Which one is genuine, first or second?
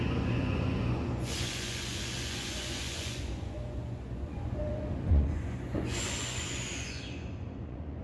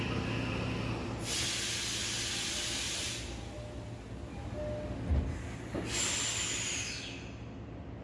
second